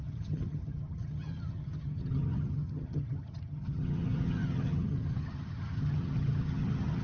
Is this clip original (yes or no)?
no